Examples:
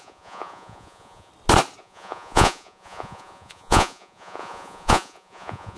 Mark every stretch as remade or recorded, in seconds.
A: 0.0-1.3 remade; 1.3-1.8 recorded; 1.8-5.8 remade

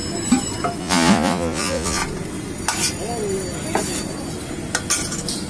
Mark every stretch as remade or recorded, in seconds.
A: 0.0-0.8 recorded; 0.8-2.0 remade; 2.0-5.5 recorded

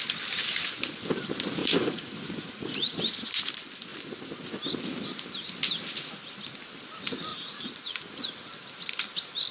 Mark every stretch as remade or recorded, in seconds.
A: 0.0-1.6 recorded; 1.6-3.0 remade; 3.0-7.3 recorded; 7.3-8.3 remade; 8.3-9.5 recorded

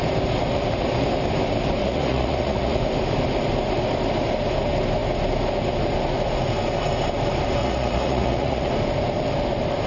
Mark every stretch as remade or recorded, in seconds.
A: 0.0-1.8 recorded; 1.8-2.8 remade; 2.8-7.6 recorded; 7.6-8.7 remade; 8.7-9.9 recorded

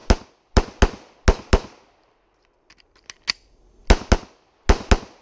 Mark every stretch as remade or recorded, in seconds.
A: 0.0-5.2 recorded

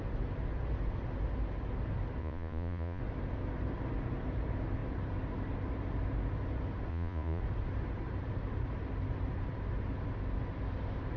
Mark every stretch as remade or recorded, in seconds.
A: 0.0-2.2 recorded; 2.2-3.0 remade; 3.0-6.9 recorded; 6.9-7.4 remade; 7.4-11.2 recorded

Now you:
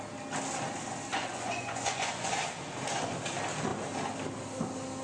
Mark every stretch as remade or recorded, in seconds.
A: 0.0-1.1 recorded; 1.1-2.3 remade; 2.3-5.0 recorded

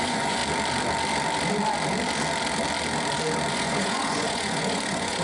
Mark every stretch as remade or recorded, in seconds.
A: 0.0-0.4 remade; 0.4-3.5 recorded; 3.5-5.2 remade